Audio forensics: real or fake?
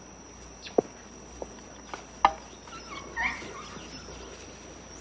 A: real